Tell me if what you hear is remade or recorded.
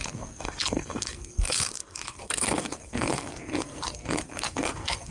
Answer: remade